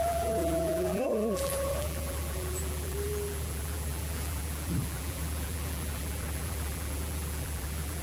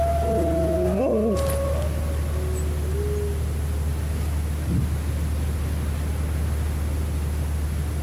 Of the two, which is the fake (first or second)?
first